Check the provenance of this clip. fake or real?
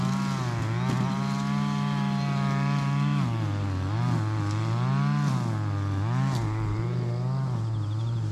real